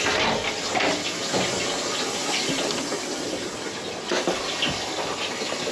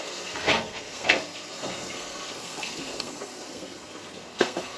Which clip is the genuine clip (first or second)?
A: first